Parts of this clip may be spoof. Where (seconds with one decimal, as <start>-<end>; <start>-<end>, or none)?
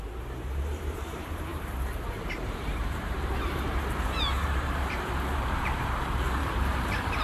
0.0-7.2